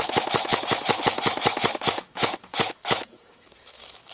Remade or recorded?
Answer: remade